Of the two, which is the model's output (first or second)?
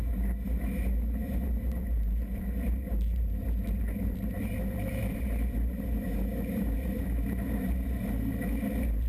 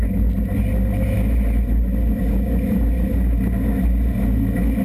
first